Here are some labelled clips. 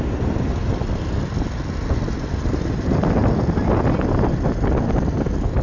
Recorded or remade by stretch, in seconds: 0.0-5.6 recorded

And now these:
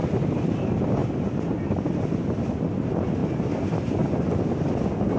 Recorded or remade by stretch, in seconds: 0.0-5.2 recorded

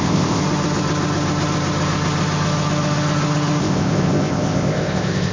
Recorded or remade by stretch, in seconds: 0.0-0.4 remade; 0.4-3.6 recorded; 3.6-5.3 remade